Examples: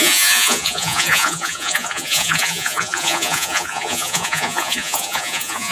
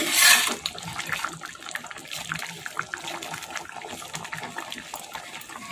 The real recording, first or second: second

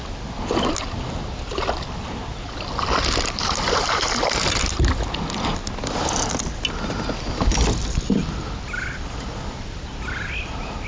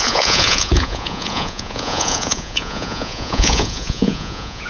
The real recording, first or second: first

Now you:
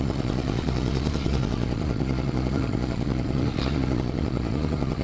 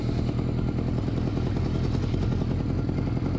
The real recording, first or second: second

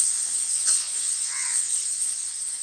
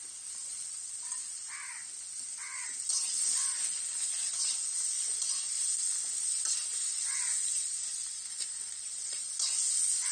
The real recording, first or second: second